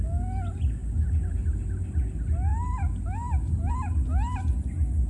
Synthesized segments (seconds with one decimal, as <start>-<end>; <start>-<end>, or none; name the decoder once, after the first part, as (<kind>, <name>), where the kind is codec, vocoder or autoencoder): none